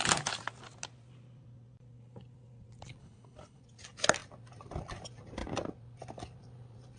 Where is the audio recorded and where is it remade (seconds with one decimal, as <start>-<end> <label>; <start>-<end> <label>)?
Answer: 0.0-3.0 recorded; 3.0-3.6 remade; 3.6-7.0 recorded